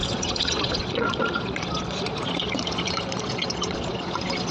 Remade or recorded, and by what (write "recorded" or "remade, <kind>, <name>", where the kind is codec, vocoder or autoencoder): remade, vocoder, Vocos